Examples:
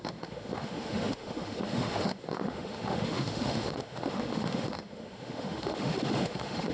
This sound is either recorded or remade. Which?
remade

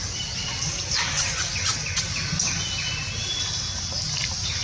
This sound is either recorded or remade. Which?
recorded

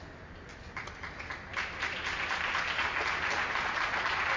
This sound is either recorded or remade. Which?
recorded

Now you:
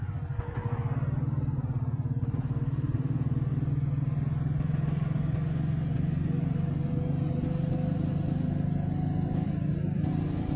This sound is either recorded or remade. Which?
recorded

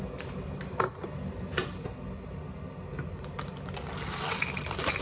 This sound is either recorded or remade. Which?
recorded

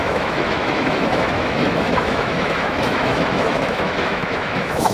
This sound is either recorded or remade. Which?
remade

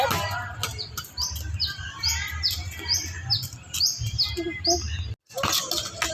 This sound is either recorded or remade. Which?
recorded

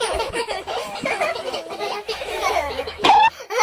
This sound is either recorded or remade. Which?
remade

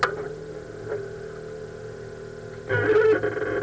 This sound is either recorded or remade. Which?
recorded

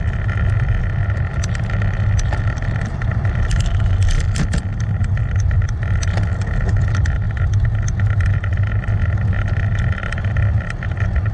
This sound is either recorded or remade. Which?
recorded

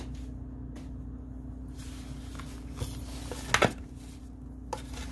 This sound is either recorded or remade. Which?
recorded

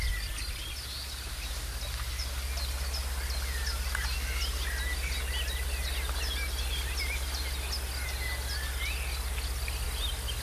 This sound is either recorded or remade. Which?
recorded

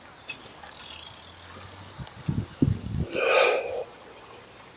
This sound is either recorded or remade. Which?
recorded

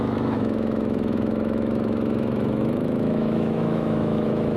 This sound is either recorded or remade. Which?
remade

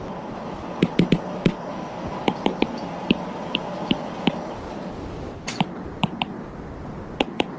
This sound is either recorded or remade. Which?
recorded